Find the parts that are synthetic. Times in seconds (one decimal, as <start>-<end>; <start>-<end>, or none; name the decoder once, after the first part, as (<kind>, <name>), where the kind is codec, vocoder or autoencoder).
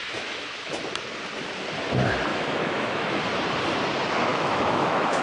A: 0.0-0.7 (autoencoder, DAC-VAE); 2.3-3.2; 4.3-5.2